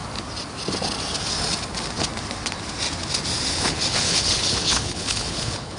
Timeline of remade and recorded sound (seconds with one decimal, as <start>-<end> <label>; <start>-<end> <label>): 0.0-3.5 recorded; 3.5-5.8 remade